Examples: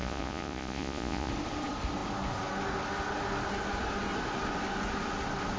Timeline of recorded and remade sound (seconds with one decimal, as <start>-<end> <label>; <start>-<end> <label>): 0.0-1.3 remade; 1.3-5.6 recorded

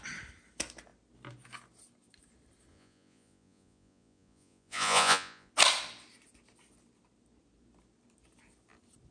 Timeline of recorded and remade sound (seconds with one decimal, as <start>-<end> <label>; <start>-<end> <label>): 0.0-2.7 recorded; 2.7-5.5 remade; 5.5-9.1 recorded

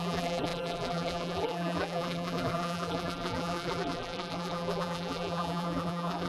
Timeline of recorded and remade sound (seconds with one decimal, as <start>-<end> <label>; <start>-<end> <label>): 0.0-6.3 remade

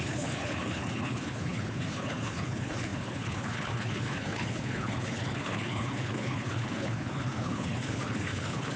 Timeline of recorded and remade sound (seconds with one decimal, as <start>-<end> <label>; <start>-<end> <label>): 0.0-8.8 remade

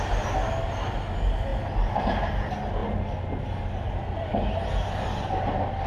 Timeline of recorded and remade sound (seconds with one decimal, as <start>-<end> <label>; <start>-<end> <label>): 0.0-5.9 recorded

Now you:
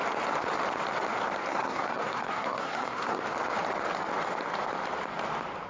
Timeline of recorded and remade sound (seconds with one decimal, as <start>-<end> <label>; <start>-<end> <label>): 0.0-1.5 recorded; 1.5-3.2 remade; 3.2-5.7 recorded